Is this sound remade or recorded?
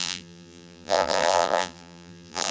remade